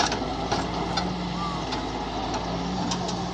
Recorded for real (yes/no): yes